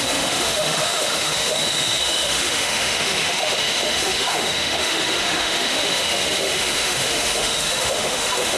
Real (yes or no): no